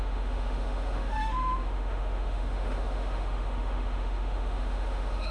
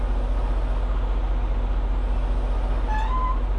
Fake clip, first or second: first